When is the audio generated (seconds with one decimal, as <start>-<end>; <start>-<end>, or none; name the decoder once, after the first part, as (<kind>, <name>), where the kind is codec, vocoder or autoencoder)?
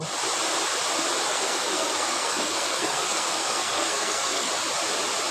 1.3-4.5 (codec, SNAC)